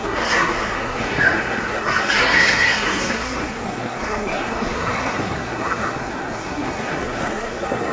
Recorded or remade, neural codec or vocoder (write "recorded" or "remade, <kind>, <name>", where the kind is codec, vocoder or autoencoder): remade, codec, SNAC